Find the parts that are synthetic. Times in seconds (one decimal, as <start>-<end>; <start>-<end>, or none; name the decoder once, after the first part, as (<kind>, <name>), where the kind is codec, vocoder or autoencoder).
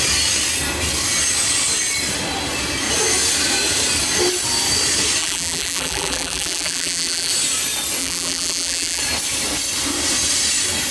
5.2-7.3 (vocoder, BigVGAN v2); 8.0-9.0